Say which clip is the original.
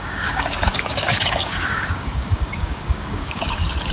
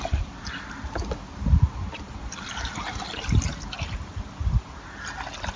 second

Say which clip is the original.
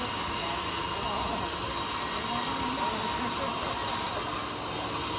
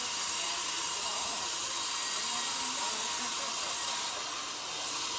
first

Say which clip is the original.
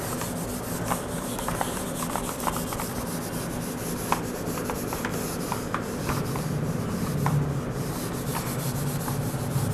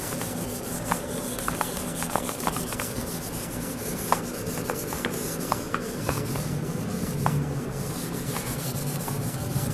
first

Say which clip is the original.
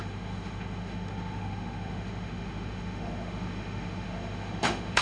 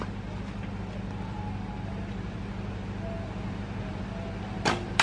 second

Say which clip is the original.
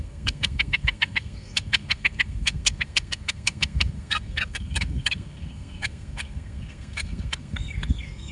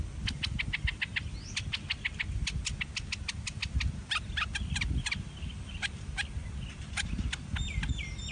second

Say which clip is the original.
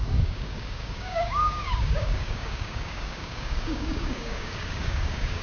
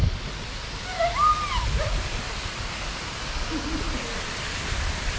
second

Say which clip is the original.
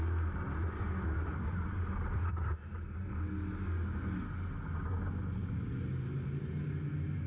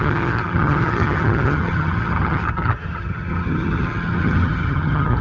first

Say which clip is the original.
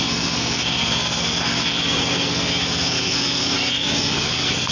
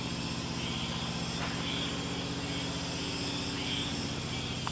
second